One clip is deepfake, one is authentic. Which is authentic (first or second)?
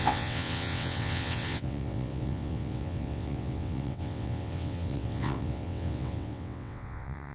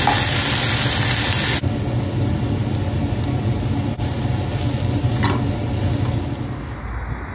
second